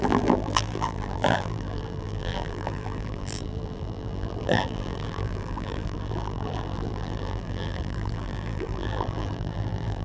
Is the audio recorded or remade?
remade